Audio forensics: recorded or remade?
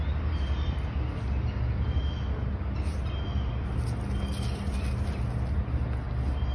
recorded